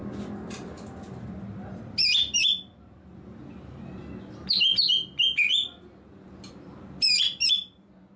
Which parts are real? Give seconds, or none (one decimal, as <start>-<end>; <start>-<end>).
0.0-8.2